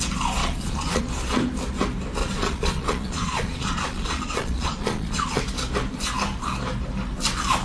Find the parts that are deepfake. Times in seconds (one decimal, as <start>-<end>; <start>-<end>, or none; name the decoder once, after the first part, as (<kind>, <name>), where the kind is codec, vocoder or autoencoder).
0.4-1.0 (vocoder, Vocos); 2.2-5.4